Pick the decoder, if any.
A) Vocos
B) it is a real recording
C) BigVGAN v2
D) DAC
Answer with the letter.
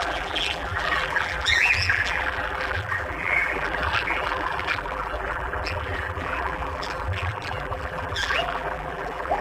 C